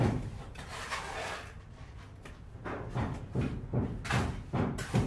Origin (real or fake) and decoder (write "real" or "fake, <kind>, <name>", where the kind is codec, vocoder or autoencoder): real